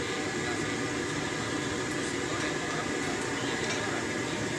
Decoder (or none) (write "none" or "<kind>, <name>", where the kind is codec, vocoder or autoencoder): none